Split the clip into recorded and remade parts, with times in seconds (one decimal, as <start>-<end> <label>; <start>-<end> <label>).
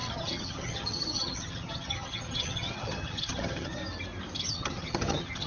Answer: 0.0-3.8 remade; 3.8-4.5 recorded; 4.5-5.5 remade